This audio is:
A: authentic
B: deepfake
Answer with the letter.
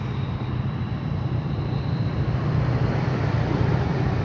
B